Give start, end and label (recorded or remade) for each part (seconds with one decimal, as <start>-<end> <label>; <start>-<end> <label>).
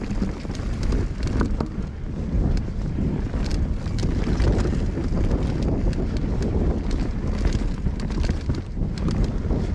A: 0.0-9.7 recorded